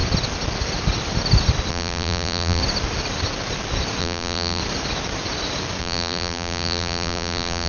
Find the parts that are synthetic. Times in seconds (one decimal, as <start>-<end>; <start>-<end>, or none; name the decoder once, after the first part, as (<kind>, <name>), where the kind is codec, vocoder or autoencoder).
1.7-2.6 (vocoder, BigVGAN v2); 4.0-4.6; 5.8-7.7